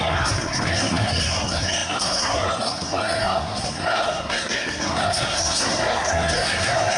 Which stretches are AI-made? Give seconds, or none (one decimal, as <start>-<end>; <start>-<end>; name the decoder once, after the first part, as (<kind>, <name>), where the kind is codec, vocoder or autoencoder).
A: 0.0-7.0 (codec, SNAC)